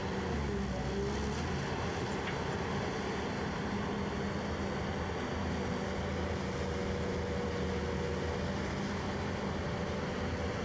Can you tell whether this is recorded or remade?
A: recorded